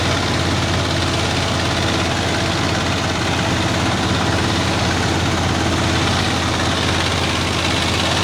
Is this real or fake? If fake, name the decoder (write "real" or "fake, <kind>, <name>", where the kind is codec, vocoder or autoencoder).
real